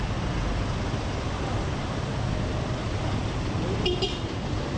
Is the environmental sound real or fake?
real